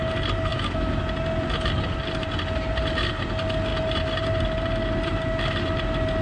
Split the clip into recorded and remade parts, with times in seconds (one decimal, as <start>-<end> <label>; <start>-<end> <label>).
0.0-0.5 recorded; 0.5-1.0 remade; 1.0-6.2 recorded

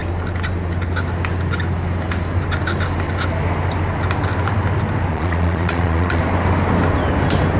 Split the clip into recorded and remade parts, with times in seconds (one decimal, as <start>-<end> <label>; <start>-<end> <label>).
0.0-5.1 recorded; 5.1-6.2 remade; 6.2-7.6 recorded

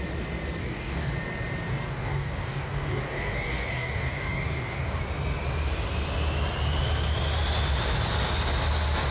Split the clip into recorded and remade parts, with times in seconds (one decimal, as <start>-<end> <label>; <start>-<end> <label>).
0.0-0.6 recorded; 0.6-1.1 remade; 1.1-1.7 recorded; 1.7-5.0 remade; 5.0-9.1 recorded

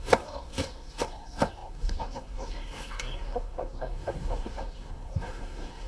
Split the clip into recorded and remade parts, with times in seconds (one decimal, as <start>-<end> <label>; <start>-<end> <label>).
0.0-5.9 remade

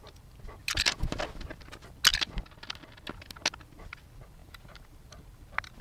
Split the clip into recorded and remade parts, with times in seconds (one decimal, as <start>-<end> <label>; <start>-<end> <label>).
0.0-4.4 recorded; 4.4-5.0 remade; 5.0-5.8 recorded

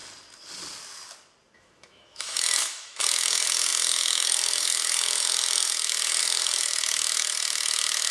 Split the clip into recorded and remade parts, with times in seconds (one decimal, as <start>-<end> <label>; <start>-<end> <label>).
0.0-1.6 recorded; 1.6-8.1 remade

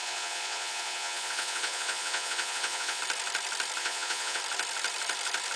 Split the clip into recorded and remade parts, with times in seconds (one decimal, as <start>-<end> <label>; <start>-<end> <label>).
0.0-3.0 remade; 3.0-3.8 recorded; 3.8-4.4 remade; 4.4-5.6 recorded

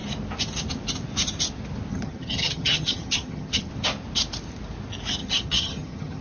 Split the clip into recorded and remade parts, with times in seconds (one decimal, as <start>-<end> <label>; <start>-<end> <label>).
0.0-1.9 recorded; 1.9-3.7 remade; 3.7-5.2 recorded; 5.2-6.2 remade